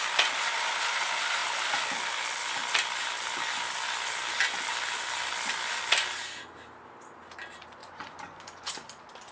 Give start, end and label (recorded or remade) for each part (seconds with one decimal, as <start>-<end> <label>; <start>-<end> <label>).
0.0-7.8 recorded; 7.8-8.7 remade; 8.7-9.3 recorded

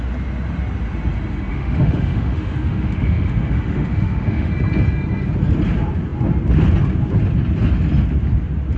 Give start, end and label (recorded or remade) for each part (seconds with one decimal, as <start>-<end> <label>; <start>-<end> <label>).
0.0-1.5 recorded; 1.5-4.5 remade; 4.5-8.8 recorded

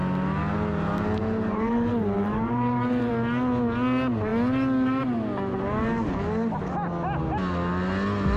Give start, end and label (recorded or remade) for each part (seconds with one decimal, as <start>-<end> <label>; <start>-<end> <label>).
0.0-1.2 recorded; 1.2-3.1 remade; 3.1-8.4 recorded

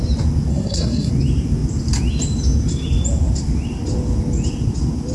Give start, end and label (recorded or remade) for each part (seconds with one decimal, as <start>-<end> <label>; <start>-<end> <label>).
0.0-0.5 recorded; 0.5-1.1 remade; 1.1-5.1 recorded

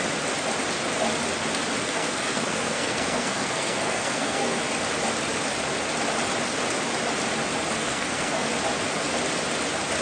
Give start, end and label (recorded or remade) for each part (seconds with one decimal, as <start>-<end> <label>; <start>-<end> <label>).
0.0-1.8 recorded; 1.8-4.6 remade; 4.6-7.8 recorded; 7.8-8.5 remade; 8.5-10.0 recorded

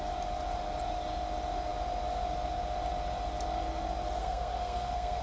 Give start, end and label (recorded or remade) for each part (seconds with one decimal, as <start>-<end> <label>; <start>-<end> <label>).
0.0-4.2 recorded; 4.2-5.2 remade

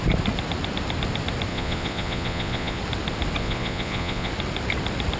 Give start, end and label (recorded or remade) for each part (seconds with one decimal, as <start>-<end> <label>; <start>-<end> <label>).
0.0-1.5 recorded; 1.5-2.8 remade; 2.8-3.4 recorded; 3.4-4.3 remade; 4.3-5.2 recorded